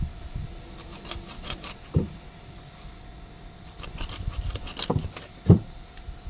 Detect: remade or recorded recorded